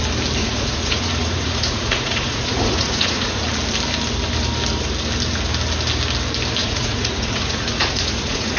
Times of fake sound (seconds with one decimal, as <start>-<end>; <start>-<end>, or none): 0.4-3.4; 6.6-8.6